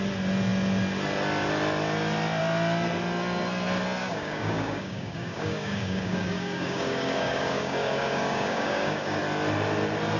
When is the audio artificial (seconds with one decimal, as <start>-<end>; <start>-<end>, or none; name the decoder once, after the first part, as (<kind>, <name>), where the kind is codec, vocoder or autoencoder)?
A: 4.0-9.2 (codec, DAC)